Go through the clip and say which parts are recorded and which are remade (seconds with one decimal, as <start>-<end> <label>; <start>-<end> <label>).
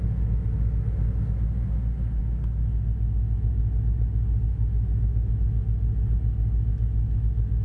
0.0-4.5 recorded; 4.5-5.3 remade; 5.3-7.6 recorded